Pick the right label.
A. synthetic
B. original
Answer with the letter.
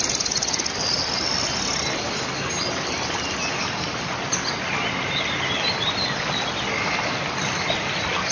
B